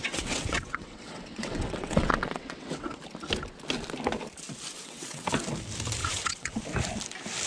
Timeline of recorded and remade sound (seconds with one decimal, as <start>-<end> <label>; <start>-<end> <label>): 0.0-3.0 remade; 3.0-4.7 recorded; 4.7-5.3 remade; 5.3-6.0 recorded; 6.0-6.6 remade; 6.6-7.5 recorded